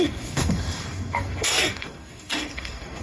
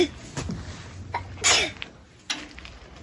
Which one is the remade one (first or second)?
first